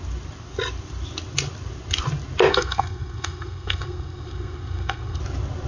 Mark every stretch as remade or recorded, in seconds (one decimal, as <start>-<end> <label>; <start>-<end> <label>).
0.0-2.5 recorded; 2.5-5.2 remade; 5.2-5.7 recorded